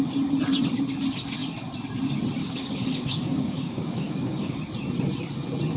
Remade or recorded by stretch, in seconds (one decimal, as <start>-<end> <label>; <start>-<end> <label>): 0.0-2.4 recorded; 2.4-4.6 remade; 4.6-5.8 recorded

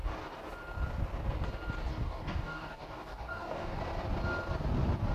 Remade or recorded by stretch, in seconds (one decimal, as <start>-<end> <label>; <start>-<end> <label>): 0.0-1.9 recorded; 1.9-3.8 remade; 3.8-5.1 recorded

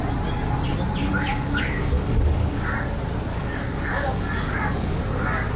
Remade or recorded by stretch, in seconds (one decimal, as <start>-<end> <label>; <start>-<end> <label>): 0.0-1.0 recorded; 1.0-2.6 remade; 2.6-3.3 recorded; 3.3-5.0 remade; 5.0-5.6 recorded

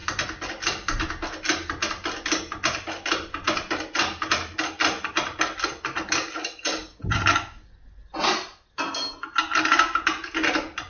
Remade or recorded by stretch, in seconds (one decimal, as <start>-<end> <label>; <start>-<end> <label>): 0.0-10.9 recorded